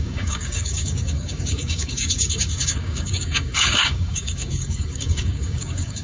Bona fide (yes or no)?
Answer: no